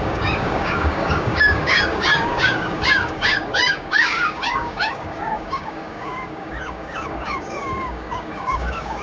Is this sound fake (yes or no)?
yes